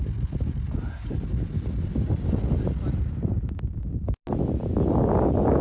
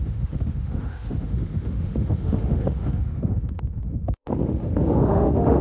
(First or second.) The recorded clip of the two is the first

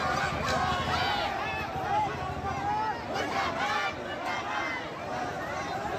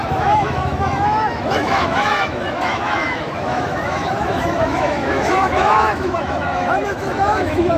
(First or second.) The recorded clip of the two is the first